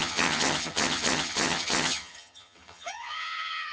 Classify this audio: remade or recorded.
remade